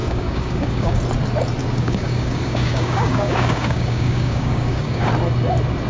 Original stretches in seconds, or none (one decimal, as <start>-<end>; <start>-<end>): 1.0-1.6; 5.1-5.9